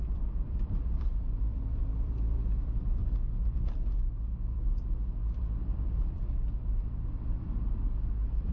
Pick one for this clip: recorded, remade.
remade